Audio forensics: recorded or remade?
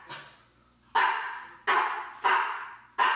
recorded